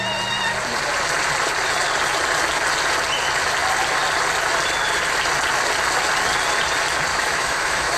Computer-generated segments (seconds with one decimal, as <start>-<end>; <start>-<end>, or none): 7.1-8.0